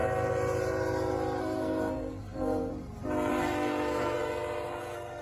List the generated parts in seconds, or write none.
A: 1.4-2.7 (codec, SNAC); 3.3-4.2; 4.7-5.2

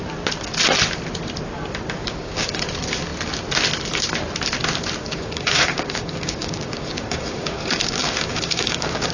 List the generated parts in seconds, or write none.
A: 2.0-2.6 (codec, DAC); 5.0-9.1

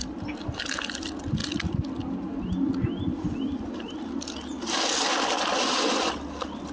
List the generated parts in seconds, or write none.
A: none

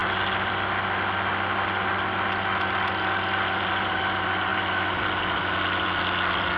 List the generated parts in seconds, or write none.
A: none

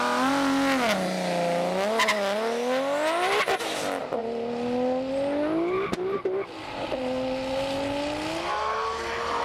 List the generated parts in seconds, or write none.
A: none

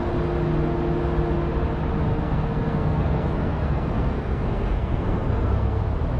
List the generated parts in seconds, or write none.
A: 2.1-5.8 (codec, SNAC)

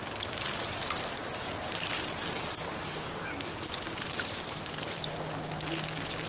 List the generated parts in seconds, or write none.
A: 1.2-5.0 (vocoder, BigVGAN v2)